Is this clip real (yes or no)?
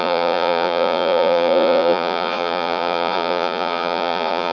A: no